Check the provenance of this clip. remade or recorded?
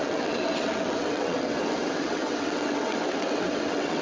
remade